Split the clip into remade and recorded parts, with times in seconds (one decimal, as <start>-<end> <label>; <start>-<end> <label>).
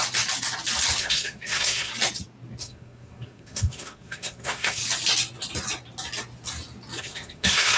0.0-1.0 recorded; 1.0-1.9 remade; 1.9-2.6 recorded; 2.6-4.8 remade; 4.8-7.0 recorded; 7.0-7.8 remade